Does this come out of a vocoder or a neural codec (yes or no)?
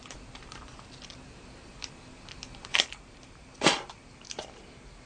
no